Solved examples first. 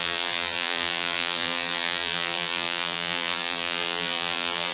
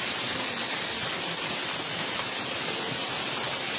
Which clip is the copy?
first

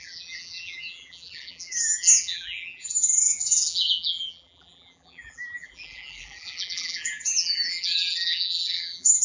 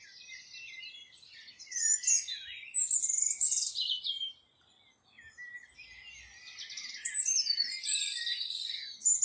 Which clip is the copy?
first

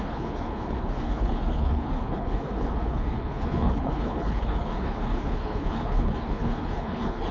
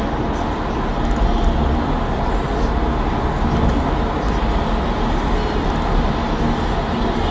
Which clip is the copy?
first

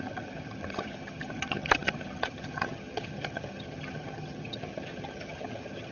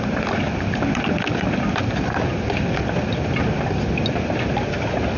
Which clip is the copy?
first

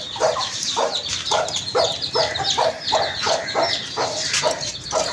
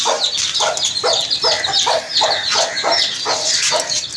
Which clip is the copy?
first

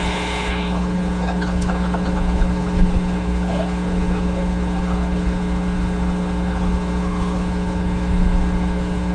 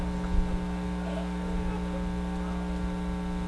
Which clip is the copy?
first